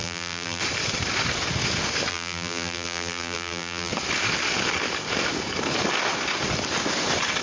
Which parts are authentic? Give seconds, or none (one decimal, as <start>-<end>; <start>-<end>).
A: 0.6-2.1; 3.9-7.4